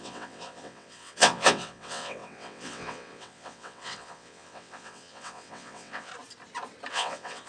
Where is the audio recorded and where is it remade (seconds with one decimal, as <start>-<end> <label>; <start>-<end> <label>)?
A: 0.0-6.1 remade; 6.1-6.9 recorded; 6.9-7.5 remade